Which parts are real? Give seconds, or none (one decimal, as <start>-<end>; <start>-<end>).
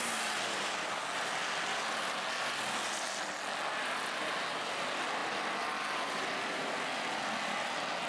0.0-8.1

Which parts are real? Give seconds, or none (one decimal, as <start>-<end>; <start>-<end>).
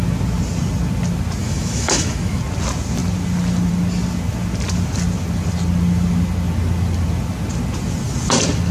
0.0-1.4; 2.4-8.7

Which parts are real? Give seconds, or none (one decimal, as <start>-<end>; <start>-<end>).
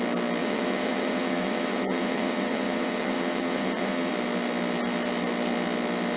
0.0-0.4; 4.1-6.2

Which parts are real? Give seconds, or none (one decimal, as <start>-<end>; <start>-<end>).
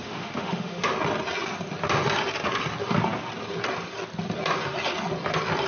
0.8-5.7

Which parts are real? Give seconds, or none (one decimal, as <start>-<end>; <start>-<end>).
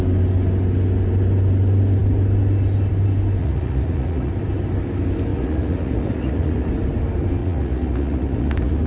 0.0-3.4; 4.3-5.3; 6.7-7.4